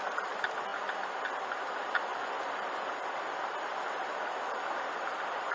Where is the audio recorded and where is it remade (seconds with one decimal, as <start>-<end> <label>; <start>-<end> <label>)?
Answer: 0.0-2.1 recorded; 2.1-5.5 remade